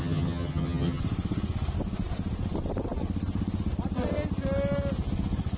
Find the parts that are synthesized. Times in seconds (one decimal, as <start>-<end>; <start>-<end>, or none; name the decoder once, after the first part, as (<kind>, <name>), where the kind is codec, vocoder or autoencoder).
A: 0.0-1.0 (vocoder, HiFi-GAN)